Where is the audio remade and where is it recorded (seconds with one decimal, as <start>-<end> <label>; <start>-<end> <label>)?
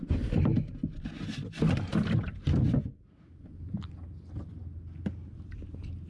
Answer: 0.0-6.1 recorded